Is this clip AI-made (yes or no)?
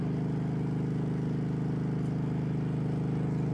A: no